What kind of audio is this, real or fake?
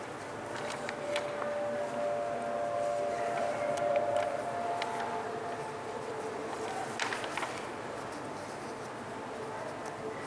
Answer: real